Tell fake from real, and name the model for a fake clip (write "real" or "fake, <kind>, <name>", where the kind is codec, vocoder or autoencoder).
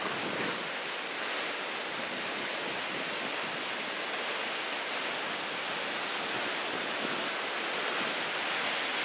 real